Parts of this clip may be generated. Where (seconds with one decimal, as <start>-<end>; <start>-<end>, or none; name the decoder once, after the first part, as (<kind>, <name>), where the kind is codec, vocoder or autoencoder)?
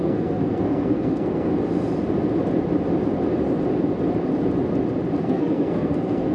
0.0-1.5 (codec, SNAC); 5.2-6.3